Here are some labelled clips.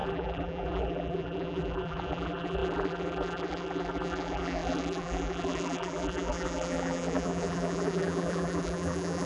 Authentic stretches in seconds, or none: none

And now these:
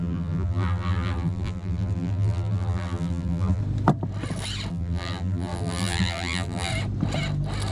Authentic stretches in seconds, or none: 3.6-4.7; 6.7-7.7